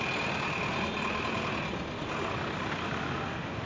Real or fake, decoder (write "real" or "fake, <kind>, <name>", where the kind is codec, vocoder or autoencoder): real